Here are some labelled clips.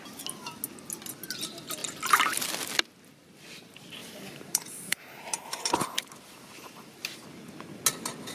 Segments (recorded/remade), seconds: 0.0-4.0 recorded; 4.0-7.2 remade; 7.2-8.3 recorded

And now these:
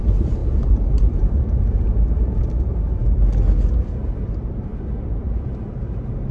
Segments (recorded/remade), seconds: 0.0-3.0 remade; 3.0-3.6 recorded; 3.6-6.3 remade

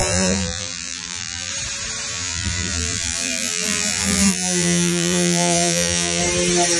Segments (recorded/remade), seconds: 0.0-1.5 remade; 1.5-2.1 recorded; 2.1-6.2 remade; 6.2-6.8 recorded

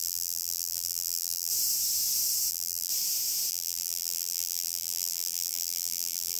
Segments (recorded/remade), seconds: 0.0-1.5 remade; 1.5-2.5 recorded; 2.5-2.9 remade; 2.9-3.5 recorded; 3.5-6.4 remade

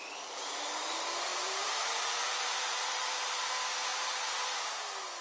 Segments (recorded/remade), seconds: 0.0-1.3 recorded; 1.3-3.4 remade; 3.4-3.9 recorded; 3.9-4.7 remade; 4.7-5.2 recorded

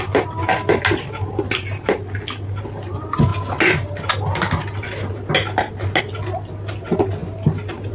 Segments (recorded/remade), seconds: 0.0-7.9 recorded